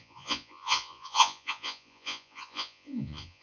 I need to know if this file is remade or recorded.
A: remade